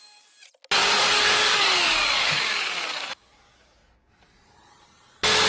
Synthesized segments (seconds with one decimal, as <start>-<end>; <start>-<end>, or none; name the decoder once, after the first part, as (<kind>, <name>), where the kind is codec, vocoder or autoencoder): 0.8-4.1 (codec, DAC)